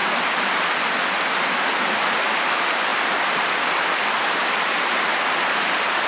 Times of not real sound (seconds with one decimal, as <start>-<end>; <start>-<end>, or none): none